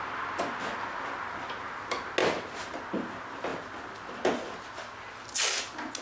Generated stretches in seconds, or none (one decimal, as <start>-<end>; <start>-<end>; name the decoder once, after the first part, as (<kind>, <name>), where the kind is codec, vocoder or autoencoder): 2.2-2.8 (vocoder, BigVGAN v2)